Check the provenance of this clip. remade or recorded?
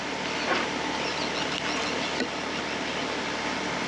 recorded